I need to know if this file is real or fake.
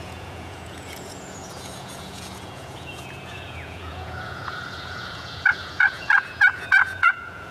fake